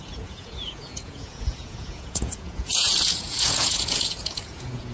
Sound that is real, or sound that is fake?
fake